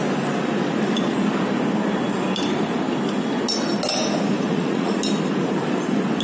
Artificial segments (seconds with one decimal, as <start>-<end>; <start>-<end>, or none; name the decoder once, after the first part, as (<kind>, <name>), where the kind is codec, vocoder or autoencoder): 4.5-5.0 (vocoder, Vocos)